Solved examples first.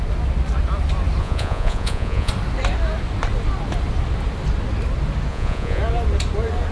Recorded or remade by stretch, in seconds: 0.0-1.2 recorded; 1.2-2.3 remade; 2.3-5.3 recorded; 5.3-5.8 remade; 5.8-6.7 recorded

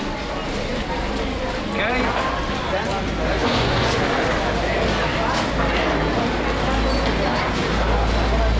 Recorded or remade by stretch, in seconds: 0.0-3.4 recorded; 3.4-4.0 remade; 4.0-8.6 recorded

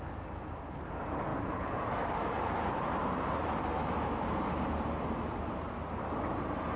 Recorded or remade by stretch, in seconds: 0.0-6.8 recorded

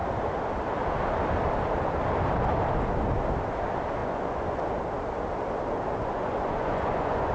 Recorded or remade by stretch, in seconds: 0.0-4.0 recorded; 4.0-4.6 remade; 4.6-6.0 recorded; 6.0-7.3 remade

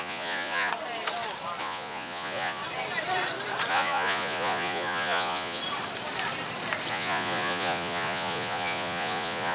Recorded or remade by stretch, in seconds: 0.0-0.7 remade; 0.7-1.6 recorded; 1.6-2.6 remade; 2.6-3.7 recorded; 3.7-5.6 remade; 5.6-6.9 recorded; 6.9-9.5 remade

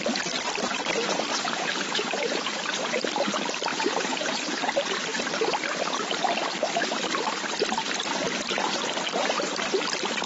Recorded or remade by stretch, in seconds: 0.0-1.3 recorded; 1.3-2.9 remade; 2.9-3.7 recorded; 3.7-4.4 remade; 4.4-10.3 recorded

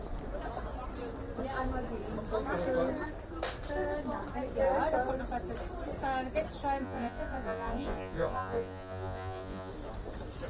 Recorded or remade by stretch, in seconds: 0.0-6.8 recorded; 6.8-9.7 remade; 9.7-10.5 recorded

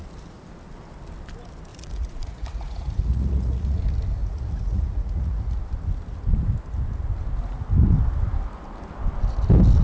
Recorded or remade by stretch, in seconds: 0.0-1.7 recorded; 1.7-3.8 remade; 3.8-4.2 recorded; 4.2-5.6 remade; 5.6-9.8 recorded